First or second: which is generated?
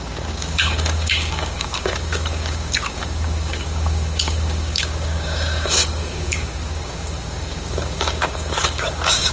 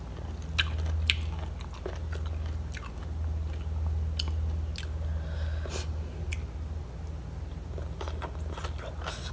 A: first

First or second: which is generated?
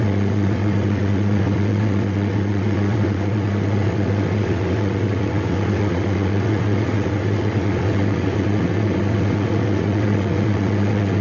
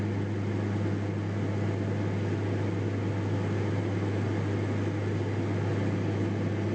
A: first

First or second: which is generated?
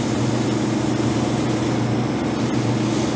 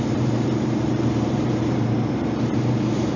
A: second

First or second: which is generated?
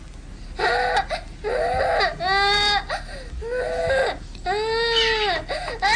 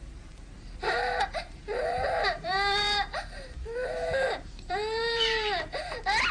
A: second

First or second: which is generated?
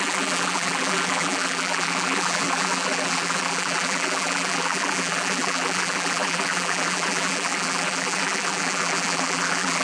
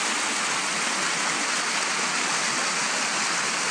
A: first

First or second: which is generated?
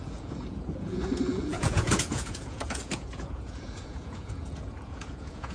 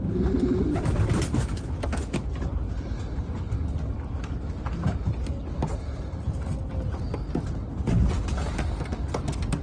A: first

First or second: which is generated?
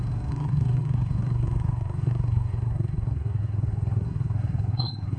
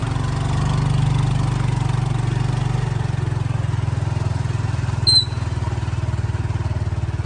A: first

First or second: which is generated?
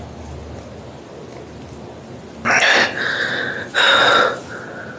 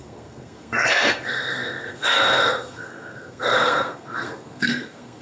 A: second